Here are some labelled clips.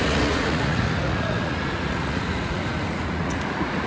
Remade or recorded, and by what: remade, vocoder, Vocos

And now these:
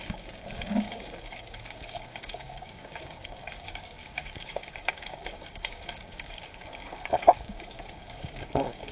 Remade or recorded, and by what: remade, codec, DAC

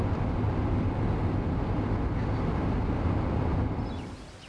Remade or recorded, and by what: recorded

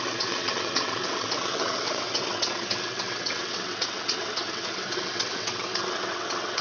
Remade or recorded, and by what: remade, vocoder, WaveNeXt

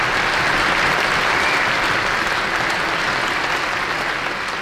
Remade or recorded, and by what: recorded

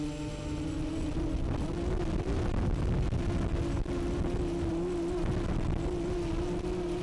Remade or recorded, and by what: recorded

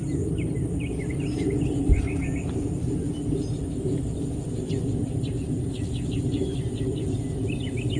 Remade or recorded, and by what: recorded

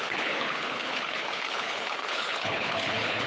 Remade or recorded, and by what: remade, codec, HILCodec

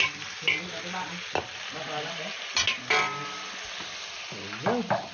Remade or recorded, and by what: recorded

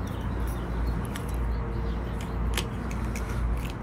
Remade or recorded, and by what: recorded